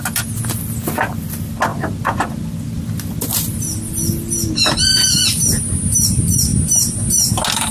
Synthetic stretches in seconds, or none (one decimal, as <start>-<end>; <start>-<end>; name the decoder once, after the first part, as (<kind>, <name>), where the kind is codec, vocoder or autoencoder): none

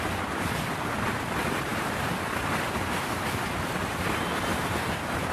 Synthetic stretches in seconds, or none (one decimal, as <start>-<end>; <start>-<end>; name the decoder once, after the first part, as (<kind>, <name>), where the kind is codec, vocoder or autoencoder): 4.5-5.3 (vocoder, BigVGAN v2)

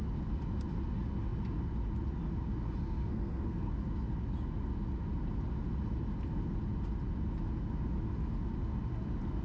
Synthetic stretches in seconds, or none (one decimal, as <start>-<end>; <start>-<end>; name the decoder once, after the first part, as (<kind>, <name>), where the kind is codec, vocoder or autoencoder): 2.8-3.7 (codec, SNAC)

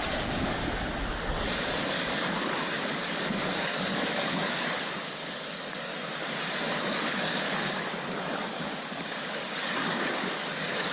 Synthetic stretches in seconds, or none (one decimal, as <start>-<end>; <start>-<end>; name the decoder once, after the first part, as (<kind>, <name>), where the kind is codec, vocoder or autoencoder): 0.0-0.6 (codec, DAC); 1.8-5.9; 6.7-10.9

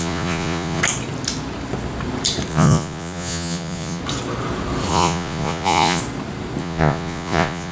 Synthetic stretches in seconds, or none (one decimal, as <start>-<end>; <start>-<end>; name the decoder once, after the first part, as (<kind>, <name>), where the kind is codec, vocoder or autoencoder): 0.0-0.8 (vocoder, Vocos); 2.5-4.0; 4.9-6.0; 6.6-7.7

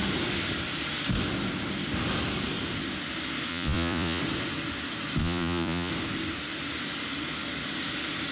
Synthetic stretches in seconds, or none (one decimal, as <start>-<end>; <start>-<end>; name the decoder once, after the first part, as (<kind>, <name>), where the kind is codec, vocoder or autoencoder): 3.5-4.2 (vocoder, Vocos); 5.2-5.9